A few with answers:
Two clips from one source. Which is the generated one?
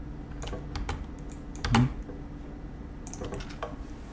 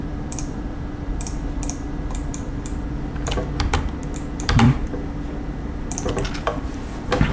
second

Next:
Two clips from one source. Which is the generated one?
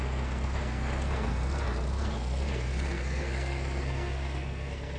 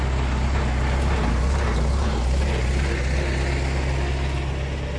first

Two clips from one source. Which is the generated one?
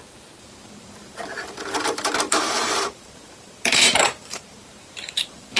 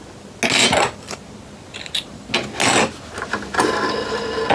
first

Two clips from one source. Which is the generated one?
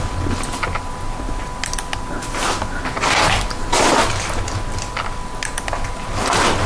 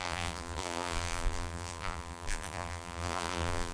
second